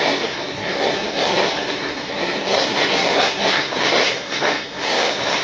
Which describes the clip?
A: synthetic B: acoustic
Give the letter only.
A